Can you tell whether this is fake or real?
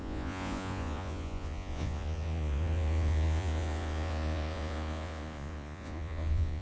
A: fake